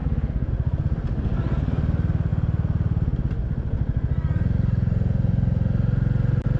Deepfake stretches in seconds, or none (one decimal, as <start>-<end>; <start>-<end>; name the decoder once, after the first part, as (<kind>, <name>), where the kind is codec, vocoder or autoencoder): 0.0-0.5 (codec, DAC)